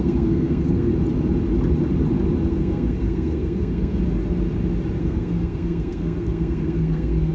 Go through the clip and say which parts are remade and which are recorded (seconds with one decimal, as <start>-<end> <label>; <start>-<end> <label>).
0.0-0.9 remade; 0.9-2.5 recorded; 2.5-4.0 remade; 4.0-5.0 recorded; 5.0-7.3 remade